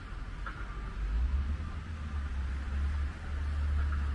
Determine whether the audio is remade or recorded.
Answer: recorded